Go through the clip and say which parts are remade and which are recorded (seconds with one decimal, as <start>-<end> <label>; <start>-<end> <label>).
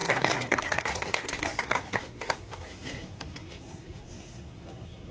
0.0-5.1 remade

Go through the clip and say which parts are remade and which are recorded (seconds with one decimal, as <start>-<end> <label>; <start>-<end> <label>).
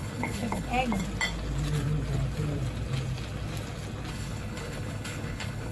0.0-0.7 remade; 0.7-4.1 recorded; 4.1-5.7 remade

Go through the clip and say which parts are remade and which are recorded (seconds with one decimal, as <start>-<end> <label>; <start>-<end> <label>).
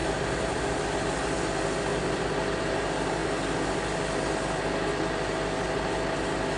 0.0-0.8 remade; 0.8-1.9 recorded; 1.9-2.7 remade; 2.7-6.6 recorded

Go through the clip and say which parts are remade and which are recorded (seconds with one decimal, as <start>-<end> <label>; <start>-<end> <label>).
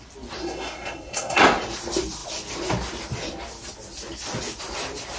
0.0-0.4 recorded; 0.4-1.4 remade; 1.4-5.2 recorded